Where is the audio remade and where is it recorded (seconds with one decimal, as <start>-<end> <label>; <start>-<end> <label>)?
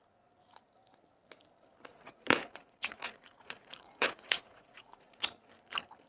0.0-1.9 recorded; 1.9-5.2 remade; 5.2-6.1 recorded